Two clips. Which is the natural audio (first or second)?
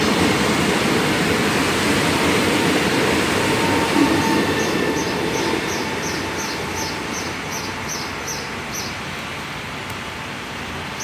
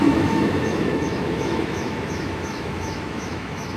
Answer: first